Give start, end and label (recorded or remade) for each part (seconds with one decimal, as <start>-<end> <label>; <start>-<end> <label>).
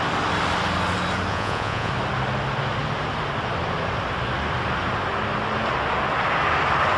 0.0-1.3 recorded; 1.3-1.9 remade; 1.9-7.0 recorded